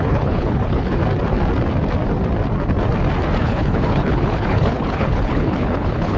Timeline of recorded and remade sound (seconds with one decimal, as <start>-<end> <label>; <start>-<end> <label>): 0.0-1.0 remade; 1.0-3.4 recorded; 3.4-6.2 remade